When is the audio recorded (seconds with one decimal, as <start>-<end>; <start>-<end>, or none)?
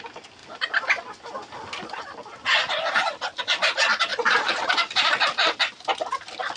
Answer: 0.0-4.1; 4.7-6.6